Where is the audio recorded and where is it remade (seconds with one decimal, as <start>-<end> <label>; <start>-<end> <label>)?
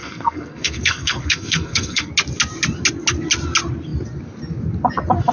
0.0-2.1 remade; 2.1-5.3 recorded